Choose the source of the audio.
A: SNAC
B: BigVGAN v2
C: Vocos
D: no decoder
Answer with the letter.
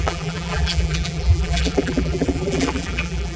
B